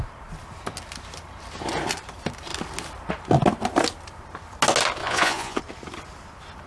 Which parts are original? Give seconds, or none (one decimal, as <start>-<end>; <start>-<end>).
0.0-5.0; 5.6-6.7